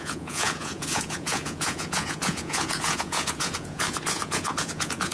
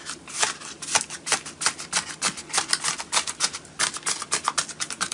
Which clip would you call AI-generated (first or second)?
first